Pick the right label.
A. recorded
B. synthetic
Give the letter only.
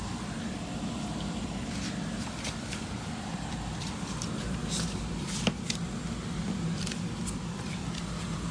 B